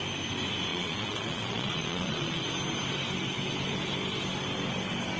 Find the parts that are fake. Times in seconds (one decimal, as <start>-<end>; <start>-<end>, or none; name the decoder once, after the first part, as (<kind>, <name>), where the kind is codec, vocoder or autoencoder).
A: 0.7-2.4 (vocoder, Vocos)